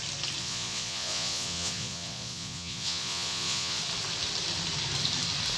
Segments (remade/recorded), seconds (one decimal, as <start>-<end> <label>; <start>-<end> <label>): 0.0-0.4 recorded; 0.4-3.8 remade; 3.8-5.6 recorded